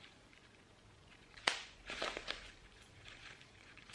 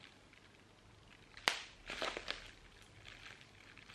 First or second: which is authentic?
second